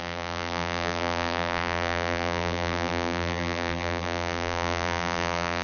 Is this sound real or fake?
fake